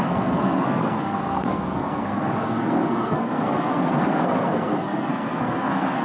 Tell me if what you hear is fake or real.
fake